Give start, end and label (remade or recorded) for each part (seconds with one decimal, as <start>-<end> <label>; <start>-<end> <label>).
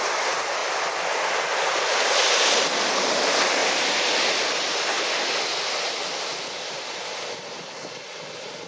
0.0-8.7 recorded